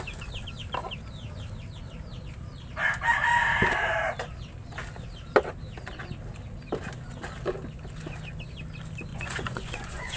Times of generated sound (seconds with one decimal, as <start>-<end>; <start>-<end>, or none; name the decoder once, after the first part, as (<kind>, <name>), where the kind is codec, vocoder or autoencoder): 9.1-10.2 (vocoder, Vocos)